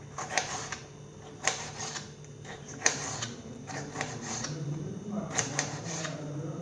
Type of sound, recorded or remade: remade